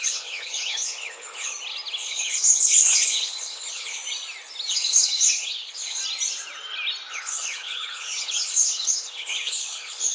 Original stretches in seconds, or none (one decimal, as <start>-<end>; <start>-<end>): 1.5-2.0; 4.0-4.7; 6.0-7.1